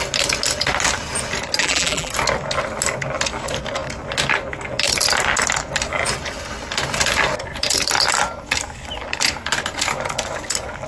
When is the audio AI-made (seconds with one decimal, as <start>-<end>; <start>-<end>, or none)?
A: 1.6-2.1

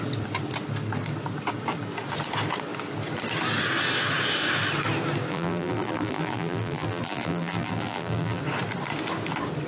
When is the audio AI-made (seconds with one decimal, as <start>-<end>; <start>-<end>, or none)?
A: 5.3-8.4

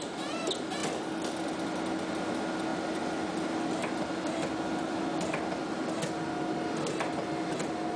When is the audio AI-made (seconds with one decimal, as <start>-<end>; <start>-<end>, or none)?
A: none

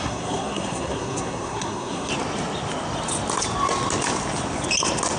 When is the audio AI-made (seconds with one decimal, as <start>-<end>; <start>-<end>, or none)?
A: 0.0-2.1

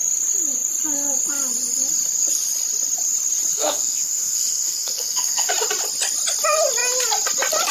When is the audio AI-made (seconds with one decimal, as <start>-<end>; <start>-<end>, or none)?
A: 3.5-5.5